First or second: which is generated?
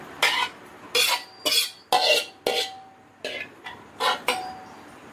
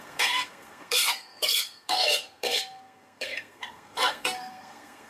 second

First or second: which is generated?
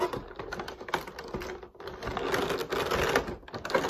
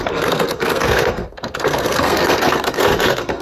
second